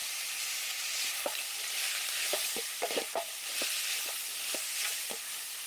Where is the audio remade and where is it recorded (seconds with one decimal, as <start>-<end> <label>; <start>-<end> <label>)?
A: 0.0-3.4 remade; 3.4-5.7 recorded